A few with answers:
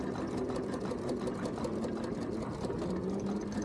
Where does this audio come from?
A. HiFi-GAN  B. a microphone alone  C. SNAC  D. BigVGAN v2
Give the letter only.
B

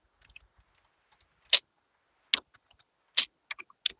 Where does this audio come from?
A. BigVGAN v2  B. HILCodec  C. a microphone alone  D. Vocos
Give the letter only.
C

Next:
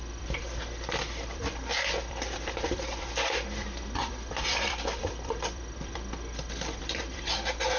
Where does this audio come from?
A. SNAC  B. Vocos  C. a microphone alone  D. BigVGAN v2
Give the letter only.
D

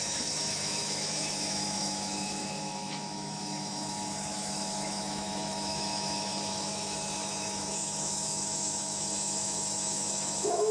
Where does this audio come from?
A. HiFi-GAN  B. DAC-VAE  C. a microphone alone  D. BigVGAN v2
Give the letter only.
B